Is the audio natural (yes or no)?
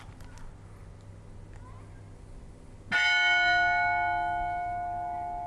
yes